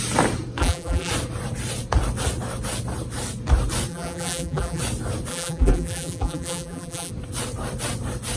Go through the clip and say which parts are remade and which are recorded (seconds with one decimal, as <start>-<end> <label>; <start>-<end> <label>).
0.0-0.6 recorded; 0.6-1.1 remade; 1.1-3.9 recorded; 3.9-4.8 remade; 4.8-5.3 recorded; 5.3-7.1 remade; 7.1-8.4 recorded